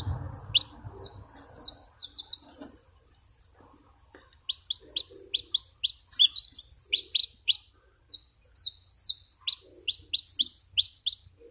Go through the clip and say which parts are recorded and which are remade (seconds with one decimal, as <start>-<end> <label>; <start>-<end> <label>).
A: 0.0-7.2 recorded; 7.2-8.1 remade; 8.1-11.5 recorded